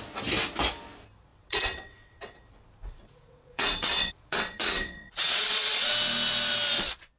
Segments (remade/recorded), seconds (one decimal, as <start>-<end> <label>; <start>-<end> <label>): 0.0-1.3 recorded; 1.3-2.4 remade; 2.4-2.8 recorded; 2.8-5.9 remade; 5.9-7.2 recorded